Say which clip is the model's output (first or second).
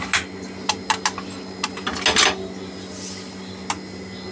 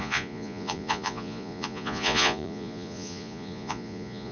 second